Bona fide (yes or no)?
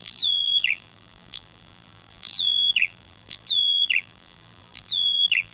no